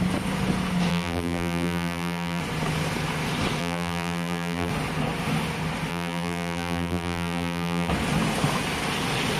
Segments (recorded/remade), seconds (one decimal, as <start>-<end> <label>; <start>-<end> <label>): 0.0-0.9 recorded; 0.9-2.4 remade; 2.4-3.6 recorded; 3.6-4.7 remade; 4.7-5.9 recorded; 5.9-7.9 remade; 7.9-9.4 recorded

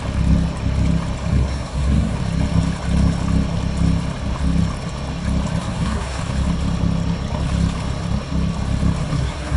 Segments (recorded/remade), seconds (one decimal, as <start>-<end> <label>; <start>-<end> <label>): 0.0-1.3 recorded; 1.3-2.2 remade; 2.2-5.6 recorded; 5.6-6.2 remade; 6.2-9.0 recorded; 9.0-9.6 remade

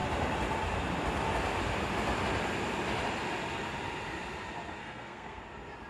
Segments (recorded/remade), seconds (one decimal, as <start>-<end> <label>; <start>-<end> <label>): 0.0-4.8 recorded; 4.8-5.4 remade; 5.4-5.9 recorded

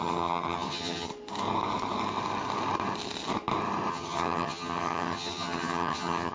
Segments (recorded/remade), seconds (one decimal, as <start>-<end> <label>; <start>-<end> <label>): 0.0-1.1 remade; 1.1-3.9 recorded; 3.9-6.3 remade

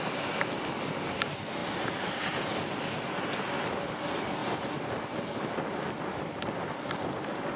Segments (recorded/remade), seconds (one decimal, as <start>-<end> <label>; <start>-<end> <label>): 0.0-7.6 recorded

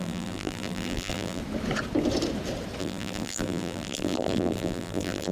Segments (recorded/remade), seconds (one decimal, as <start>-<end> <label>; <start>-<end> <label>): 0.0-1.4 remade; 1.4-2.8 recorded; 2.8-5.3 remade

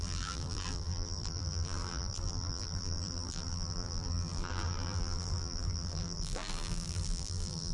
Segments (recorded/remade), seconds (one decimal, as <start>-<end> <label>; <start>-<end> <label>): 0.0-7.7 remade